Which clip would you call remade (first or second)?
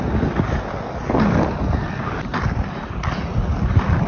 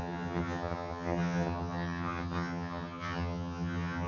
second